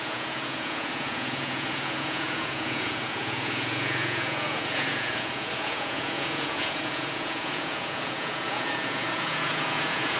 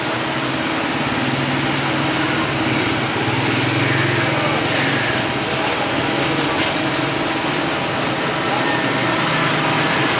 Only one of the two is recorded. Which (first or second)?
second